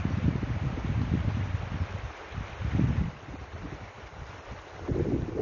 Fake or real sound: real